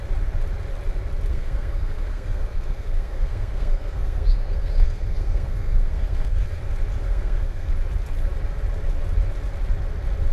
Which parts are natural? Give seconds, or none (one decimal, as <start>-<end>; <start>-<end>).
0.0-1.3; 6.6-7.0; 7.7-10.3